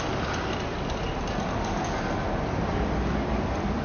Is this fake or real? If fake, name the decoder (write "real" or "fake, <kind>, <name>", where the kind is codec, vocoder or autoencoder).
real